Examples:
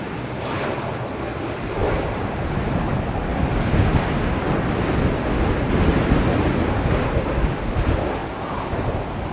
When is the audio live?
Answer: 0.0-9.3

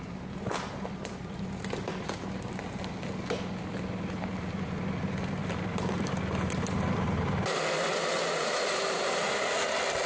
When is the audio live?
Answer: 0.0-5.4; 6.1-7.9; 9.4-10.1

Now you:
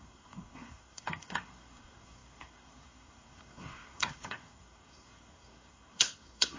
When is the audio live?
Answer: none

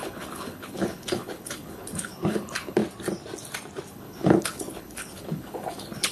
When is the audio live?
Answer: 2.8-3.9

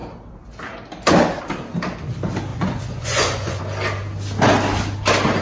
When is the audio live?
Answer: 0.0-2.5; 3.6-5.4

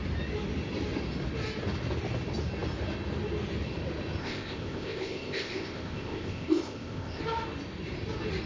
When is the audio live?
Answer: 0.0-4.2; 7.2-8.5

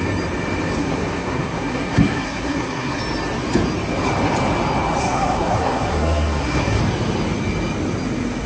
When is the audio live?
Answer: 0.0-0.8; 3.0-5.0; 6.8-8.5